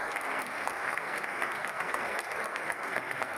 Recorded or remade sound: remade